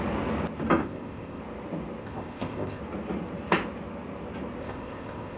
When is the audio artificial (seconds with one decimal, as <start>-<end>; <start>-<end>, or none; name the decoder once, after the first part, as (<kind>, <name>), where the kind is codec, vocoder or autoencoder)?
0.8-1.4 (codec, ZipCodec); 2.0-2.8; 4.6-5.4